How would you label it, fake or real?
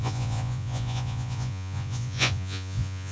fake